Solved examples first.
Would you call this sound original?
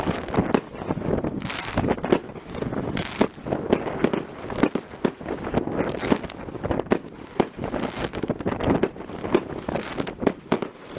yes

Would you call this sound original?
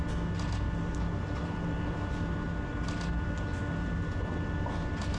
yes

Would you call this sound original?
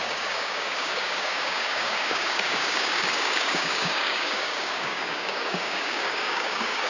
no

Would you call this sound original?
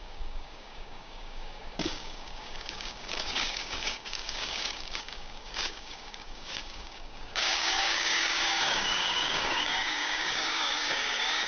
no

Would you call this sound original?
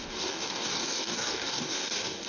no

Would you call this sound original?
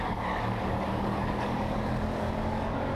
no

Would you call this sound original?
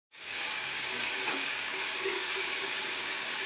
no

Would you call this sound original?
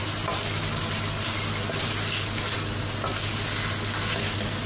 yes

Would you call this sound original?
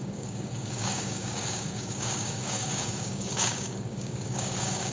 no